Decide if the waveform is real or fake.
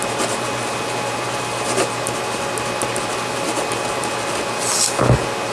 real